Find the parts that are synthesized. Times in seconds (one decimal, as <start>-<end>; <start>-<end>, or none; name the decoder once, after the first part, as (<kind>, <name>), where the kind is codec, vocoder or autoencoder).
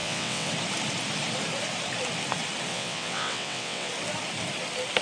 0.0-0.5 (vocoder, WaveNeXt); 2.7-3.9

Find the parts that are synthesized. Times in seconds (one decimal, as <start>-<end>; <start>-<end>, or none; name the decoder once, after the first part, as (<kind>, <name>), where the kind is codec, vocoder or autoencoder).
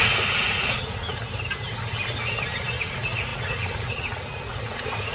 0.0-1.2 (vocoder, Vocos); 2.9-5.1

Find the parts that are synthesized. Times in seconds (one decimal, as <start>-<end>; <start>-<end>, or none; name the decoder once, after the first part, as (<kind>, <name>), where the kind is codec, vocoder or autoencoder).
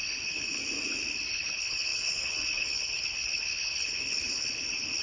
0.0-0.6 (codec, HILCodec); 1.3-5.0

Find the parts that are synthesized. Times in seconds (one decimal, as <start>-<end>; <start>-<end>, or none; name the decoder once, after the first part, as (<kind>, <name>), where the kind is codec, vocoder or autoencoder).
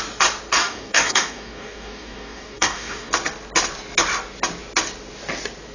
0.6-3.1 (codec, DAC)